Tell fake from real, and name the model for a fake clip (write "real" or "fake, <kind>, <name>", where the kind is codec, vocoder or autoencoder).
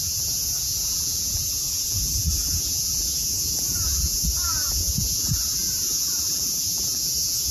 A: fake, vocoder, BigVGAN v2